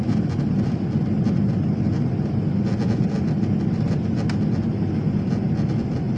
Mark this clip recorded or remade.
recorded